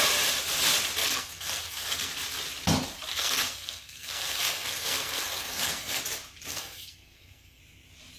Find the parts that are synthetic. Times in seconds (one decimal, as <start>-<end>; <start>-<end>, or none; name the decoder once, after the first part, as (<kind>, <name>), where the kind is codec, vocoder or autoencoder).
1.0-2.1 (codec, SNAC); 3.1-6.0; 6.5-7.6